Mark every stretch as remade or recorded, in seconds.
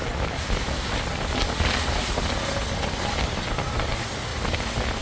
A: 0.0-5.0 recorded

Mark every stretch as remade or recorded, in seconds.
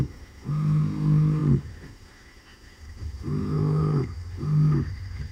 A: 0.0-5.3 remade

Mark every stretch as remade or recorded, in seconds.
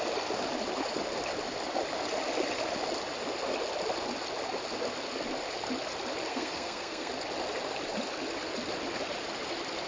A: 0.0-6.3 recorded; 6.3-7.1 remade; 7.1-9.9 recorded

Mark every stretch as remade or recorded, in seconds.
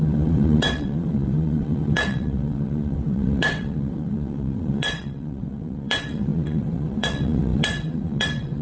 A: 0.0-8.6 remade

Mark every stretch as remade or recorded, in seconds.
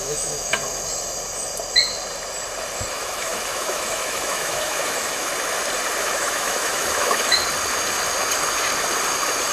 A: 0.0-0.6 remade; 0.6-2.9 recorded; 2.9-5.3 remade; 5.3-6.0 recorded; 6.0-7.4 remade; 7.4-9.5 recorded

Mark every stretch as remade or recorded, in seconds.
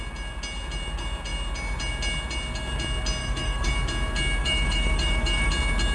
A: 0.0-3.2 recorded; 3.2-3.7 remade; 3.7-4.4 recorded; 4.4-5.5 remade; 5.5-5.9 recorded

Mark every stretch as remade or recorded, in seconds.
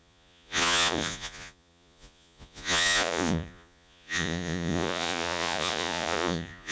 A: 0.0-6.7 remade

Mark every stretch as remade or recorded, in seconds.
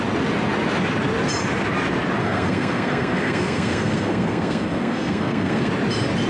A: 0.0-2.2 recorded; 2.2-5.7 remade; 5.7-6.3 recorded